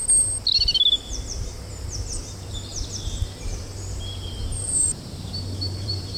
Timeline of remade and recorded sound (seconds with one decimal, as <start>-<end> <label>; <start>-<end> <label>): 0.0-1.7 recorded; 1.7-6.2 remade